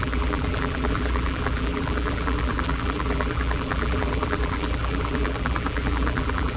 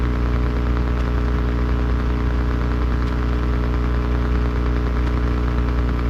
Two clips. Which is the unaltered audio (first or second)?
second